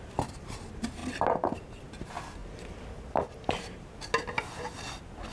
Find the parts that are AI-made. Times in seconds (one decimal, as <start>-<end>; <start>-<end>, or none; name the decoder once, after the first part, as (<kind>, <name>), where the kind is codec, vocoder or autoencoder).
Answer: none